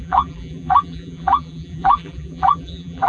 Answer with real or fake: fake